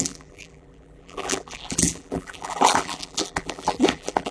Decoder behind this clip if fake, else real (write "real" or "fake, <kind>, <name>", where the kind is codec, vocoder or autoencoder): fake, vocoder, BigVGAN v2